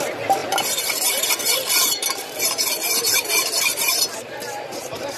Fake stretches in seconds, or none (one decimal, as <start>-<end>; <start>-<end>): 0.4-1.3; 1.8-5.2